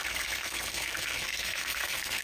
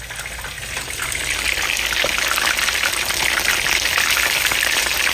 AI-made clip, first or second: first